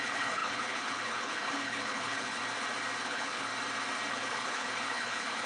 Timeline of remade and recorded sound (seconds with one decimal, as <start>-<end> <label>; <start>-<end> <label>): 0.0-2.4 remade; 2.4-3.0 recorded; 3.0-3.5 remade; 3.5-4.1 recorded; 4.1-5.5 remade

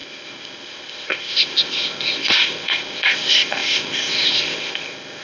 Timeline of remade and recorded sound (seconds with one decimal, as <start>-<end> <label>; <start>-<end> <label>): 0.0-5.2 remade

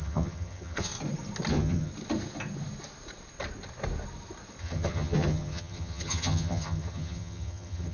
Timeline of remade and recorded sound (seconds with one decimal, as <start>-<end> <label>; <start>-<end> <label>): 0.0-0.9 remade; 0.9-1.5 recorded; 1.5-1.9 remade; 1.9-4.6 recorded; 4.6-7.9 remade

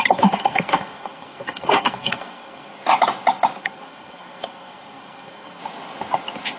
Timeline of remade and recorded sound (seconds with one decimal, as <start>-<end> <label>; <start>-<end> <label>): 0.0-2.7 remade; 2.7-3.6 recorded; 3.6-5.6 remade; 5.6-6.6 recorded